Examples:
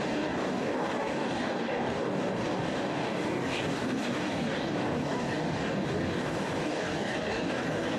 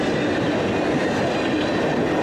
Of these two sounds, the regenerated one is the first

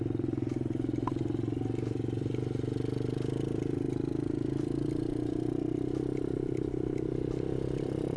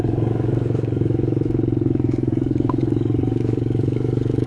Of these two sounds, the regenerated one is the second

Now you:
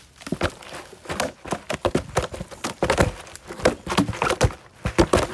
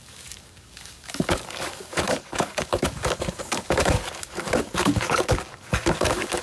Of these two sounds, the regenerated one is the second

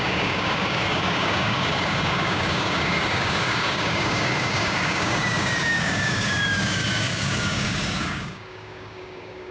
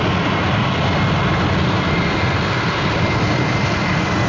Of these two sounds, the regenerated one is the first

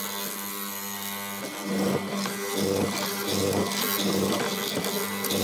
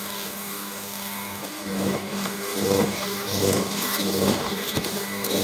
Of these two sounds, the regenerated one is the second